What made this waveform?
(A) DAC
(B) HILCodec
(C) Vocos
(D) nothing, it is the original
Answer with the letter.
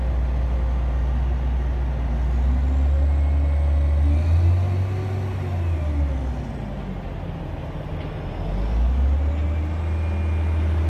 D